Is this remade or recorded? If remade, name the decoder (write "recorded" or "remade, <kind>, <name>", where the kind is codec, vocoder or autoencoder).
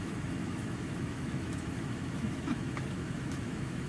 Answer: remade, autoencoder, DAC-VAE